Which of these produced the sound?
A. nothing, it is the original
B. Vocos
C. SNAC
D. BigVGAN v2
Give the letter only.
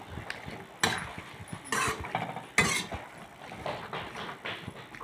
A